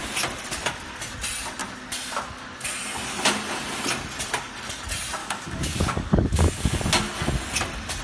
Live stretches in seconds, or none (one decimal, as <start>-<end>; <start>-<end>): 0.0-5.2; 6.8-8.0